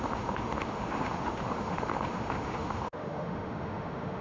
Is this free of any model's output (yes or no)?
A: no